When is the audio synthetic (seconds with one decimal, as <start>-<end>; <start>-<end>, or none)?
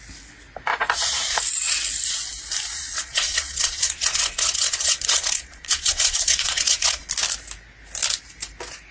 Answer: 0.7-1.4; 2.7-7.1